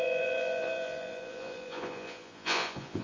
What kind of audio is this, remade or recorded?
remade